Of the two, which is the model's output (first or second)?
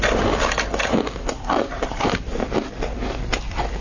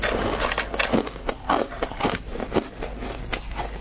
first